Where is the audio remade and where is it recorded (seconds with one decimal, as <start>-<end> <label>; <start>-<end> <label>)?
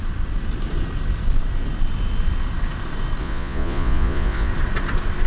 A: 0.0-3.2 recorded; 3.2-4.5 remade; 4.5-5.3 recorded